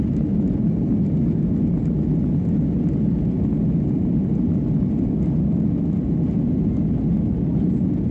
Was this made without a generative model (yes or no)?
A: yes